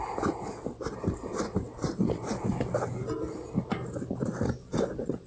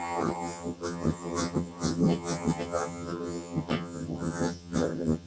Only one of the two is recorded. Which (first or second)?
first